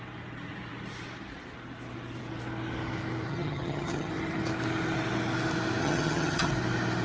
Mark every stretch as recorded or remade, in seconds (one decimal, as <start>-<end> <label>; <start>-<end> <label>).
0.0-3.3 recorded; 3.3-4.1 remade; 4.1-5.8 recorded; 5.8-6.5 remade; 6.5-7.0 recorded